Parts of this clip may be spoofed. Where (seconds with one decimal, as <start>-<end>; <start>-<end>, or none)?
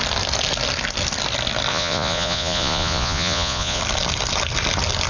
1.7-3.8